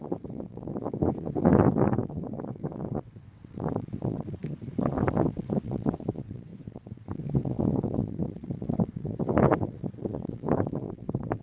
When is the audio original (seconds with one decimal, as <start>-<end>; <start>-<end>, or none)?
none